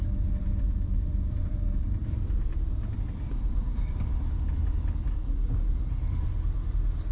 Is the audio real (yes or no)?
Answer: no